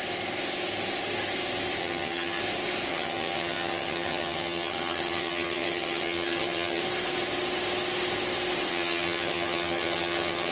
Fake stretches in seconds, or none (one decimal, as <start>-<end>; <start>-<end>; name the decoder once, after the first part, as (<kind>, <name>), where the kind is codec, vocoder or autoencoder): 1.8-2.4 (vocoder, HiFi-GAN); 2.9-6.8; 8.7-10.5

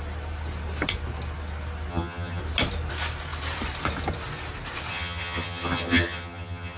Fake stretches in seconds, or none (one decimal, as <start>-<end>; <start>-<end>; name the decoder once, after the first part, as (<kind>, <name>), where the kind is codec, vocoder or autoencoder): 1.9-2.4 (vocoder, HiFi-GAN); 4.9-6.8

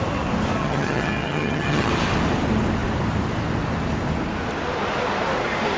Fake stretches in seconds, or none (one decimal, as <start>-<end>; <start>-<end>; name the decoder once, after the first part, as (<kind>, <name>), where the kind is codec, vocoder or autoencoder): 0.6-1.9 (vocoder, HiFi-GAN)

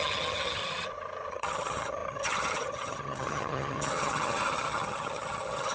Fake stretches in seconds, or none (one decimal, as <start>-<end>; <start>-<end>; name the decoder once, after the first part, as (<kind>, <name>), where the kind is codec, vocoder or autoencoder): 0.0-0.6 (vocoder, HiFi-GAN); 1.3-5.7

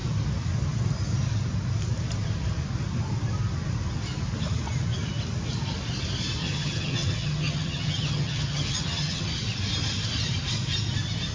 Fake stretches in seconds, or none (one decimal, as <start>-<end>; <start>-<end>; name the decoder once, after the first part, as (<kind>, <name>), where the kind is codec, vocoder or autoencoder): 6.4-9.3 (vocoder, HiFi-GAN)